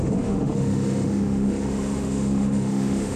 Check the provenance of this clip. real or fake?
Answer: fake